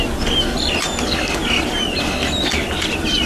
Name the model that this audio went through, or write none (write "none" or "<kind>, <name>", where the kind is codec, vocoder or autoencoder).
none